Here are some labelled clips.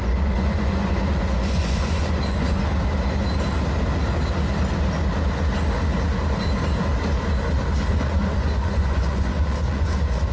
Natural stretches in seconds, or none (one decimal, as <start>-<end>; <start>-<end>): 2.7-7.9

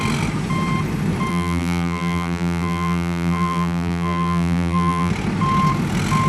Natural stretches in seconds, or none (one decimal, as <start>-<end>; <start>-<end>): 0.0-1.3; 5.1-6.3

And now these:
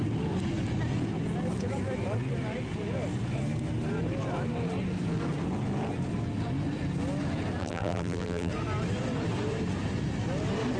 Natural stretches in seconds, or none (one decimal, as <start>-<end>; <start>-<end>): 0.0-7.6; 8.5-10.8